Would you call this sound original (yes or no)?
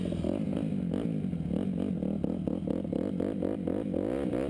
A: yes